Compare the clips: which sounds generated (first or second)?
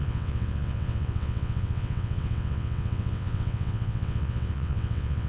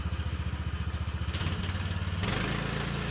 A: first